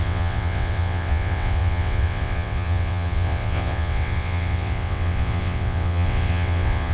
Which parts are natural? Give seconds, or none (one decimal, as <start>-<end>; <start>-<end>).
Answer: none